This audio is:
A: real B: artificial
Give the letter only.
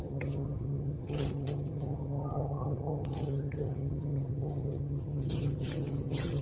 B